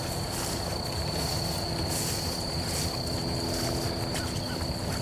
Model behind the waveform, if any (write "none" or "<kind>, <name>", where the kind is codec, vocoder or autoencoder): none